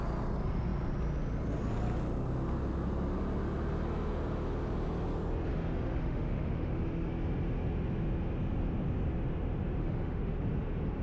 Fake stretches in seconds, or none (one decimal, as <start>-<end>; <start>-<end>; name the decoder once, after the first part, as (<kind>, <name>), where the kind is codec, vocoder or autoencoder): 5.5-7.1 (autoencoder, DAC-VAE); 9.8-10.3